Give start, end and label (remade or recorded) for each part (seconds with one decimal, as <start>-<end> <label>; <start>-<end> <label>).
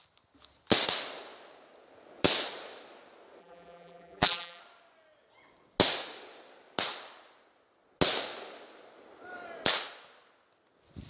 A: 0.0-3.4 recorded; 3.4-4.6 remade; 4.6-11.1 recorded